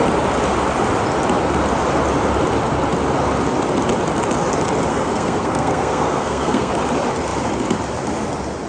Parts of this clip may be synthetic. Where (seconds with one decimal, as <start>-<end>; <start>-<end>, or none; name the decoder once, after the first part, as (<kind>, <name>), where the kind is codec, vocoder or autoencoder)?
4.9-6.7 (codec, SNAC)